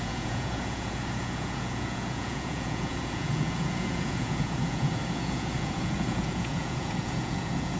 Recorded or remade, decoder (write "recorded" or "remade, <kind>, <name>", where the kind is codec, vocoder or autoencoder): remade, vocoder, Vocos